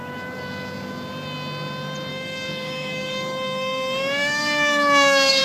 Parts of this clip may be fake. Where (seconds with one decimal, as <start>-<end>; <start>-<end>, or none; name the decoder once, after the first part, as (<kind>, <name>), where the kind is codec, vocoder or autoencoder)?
2.1-5.4 (codec, DAC)